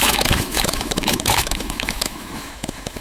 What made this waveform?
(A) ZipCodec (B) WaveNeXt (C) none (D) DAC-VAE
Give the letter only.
D